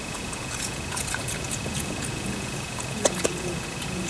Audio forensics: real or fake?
fake